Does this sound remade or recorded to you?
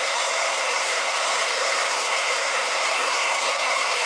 remade